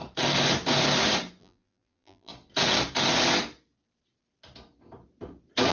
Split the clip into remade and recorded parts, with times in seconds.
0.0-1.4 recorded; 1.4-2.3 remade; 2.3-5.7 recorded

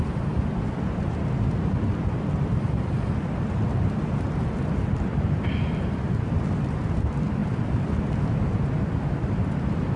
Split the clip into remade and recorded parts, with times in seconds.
0.0-10.0 recorded